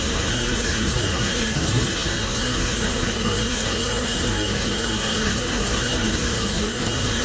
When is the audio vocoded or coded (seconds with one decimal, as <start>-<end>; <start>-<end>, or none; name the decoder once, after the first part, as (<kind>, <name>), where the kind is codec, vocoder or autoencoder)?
0.0-7.2 (codec, SNAC)